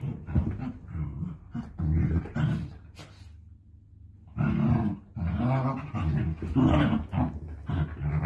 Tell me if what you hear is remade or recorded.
recorded